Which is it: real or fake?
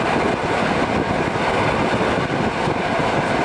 real